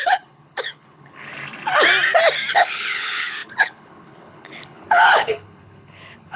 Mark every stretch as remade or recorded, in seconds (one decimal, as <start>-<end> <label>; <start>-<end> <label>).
0.0-1.3 remade; 1.3-2.5 recorded; 2.5-6.4 remade